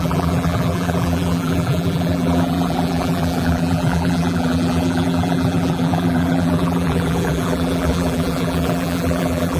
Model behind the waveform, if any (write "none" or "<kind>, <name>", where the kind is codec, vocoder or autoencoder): vocoder, BigVGAN v2